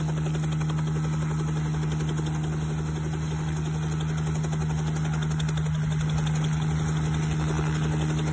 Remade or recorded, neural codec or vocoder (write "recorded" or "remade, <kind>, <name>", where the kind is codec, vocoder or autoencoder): recorded